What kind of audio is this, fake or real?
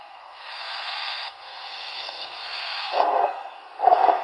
fake